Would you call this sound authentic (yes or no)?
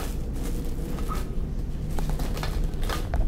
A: yes